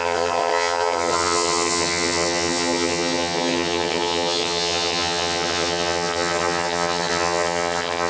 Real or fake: fake